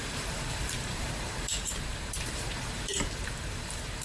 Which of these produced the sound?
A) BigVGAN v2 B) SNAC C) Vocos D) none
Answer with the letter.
A